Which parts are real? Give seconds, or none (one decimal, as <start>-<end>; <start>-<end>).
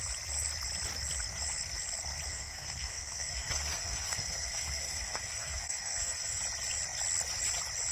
0.0-2.3; 6.4-7.9